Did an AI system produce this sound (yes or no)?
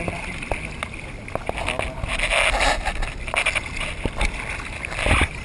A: no